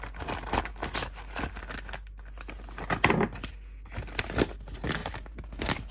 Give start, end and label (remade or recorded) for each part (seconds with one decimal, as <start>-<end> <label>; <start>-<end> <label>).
0.0-5.0 recorded; 5.0-5.9 remade